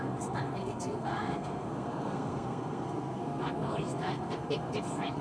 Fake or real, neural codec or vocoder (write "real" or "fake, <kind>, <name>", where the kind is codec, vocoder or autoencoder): fake, codec, SNAC